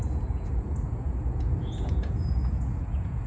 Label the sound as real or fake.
fake